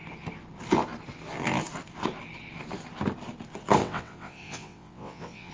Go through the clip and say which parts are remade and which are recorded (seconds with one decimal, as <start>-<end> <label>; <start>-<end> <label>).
0.0-3.8 recorded; 3.8-5.5 remade